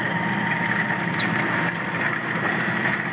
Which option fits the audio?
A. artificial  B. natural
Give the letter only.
B